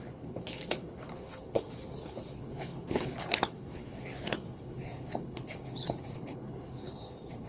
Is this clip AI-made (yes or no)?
yes